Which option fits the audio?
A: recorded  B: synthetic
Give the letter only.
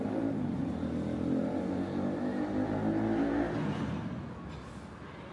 A